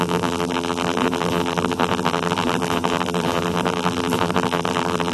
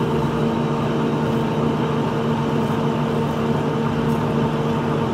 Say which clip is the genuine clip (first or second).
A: second